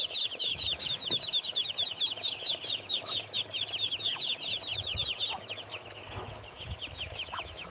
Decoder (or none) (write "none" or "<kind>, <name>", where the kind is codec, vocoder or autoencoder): autoencoder, DAC-VAE